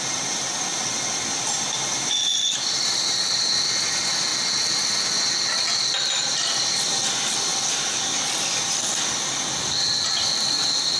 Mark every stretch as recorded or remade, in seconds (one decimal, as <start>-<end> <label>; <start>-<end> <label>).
0.0-0.7 recorded; 0.7-3.7 remade; 3.7-7.5 recorded; 7.5-8.9 remade; 8.9-11.0 recorded